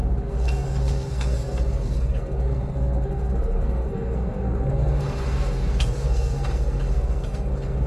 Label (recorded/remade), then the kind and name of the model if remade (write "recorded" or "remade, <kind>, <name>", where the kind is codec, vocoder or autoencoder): remade, codec, SNAC